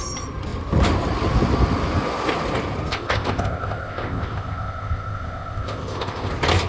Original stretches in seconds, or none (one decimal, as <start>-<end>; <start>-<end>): 0.0-2.9; 6.3-6.7